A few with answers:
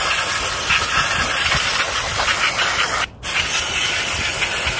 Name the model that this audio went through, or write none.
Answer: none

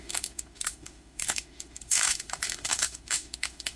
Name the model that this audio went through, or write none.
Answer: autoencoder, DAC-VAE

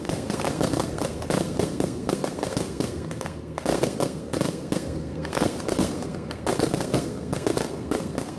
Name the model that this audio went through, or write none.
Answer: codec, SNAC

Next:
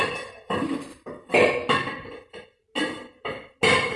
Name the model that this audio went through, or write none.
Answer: none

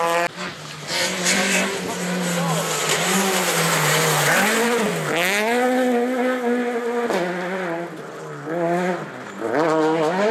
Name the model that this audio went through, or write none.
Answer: none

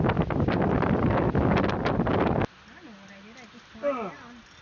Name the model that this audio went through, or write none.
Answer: none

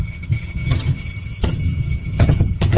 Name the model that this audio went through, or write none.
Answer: vocoder, HiFi-GAN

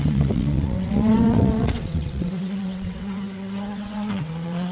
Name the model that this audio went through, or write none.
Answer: vocoder, WaveNeXt